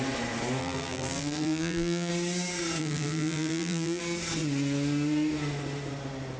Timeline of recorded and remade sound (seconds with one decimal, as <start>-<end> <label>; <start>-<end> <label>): 0.0-0.6 recorded; 0.6-2.1 remade; 2.1-2.8 recorded; 2.8-4.0 remade; 4.0-6.4 recorded